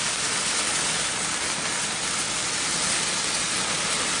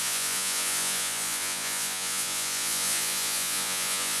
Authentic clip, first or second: first